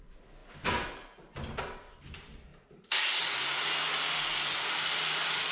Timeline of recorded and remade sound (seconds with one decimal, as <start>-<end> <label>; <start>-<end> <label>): 0.0-5.5 recorded

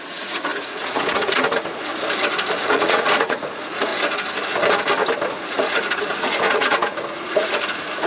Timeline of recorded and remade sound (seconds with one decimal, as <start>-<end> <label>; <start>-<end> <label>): 0.0-1.9 remade; 1.9-2.6 recorded; 2.6-3.9 remade; 3.9-5.3 recorded; 5.3-8.1 remade

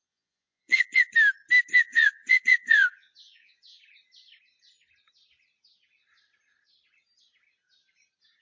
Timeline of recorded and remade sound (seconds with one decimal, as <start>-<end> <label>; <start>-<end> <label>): 0.0-1.1 remade; 1.1-1.7 recorded; 1.7-3.8 remade; 3.8-8.4 recorded